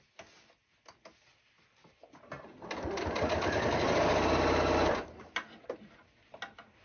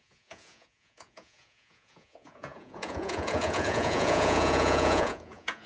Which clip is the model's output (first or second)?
second